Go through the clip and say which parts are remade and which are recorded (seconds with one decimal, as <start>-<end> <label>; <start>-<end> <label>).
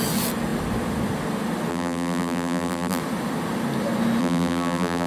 0.0-1.7 recorded; 1.7-3.0 remade; 3.0-4.2 recorded; 4.2-5.1 remade